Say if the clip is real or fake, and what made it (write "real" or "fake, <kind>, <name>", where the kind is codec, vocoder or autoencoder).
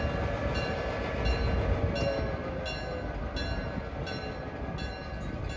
real